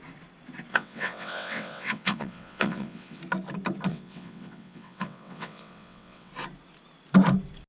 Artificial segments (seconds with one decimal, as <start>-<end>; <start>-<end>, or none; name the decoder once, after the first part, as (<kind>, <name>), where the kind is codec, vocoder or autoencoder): 0.7-3.2 (vocoder, WaveNeXt); 3.9-6.3